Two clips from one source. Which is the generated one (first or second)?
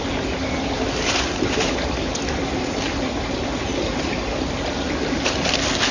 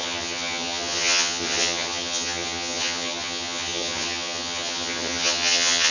second